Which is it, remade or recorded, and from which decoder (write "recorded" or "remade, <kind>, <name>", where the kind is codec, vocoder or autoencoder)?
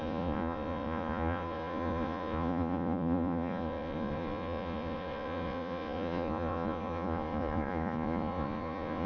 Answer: remade, vocoder, Vocos